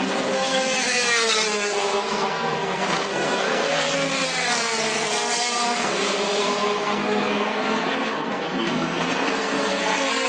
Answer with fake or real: fake